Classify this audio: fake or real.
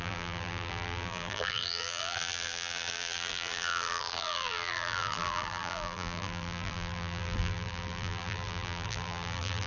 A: fake